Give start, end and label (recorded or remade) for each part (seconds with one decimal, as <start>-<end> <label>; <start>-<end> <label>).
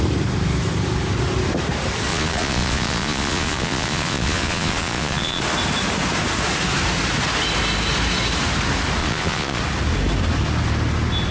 0.0-2.1 recorded; 2.1-5.4 remade; 5.4-9.0 recorded; 9.0-9.6 remade; 9.6-11.3 recorded